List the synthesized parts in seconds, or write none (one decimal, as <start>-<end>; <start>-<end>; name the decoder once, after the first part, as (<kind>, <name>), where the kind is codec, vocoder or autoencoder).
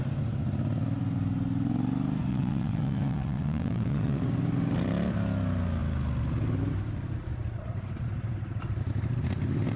2.3-4.2 (vocoder, WaveNeXt)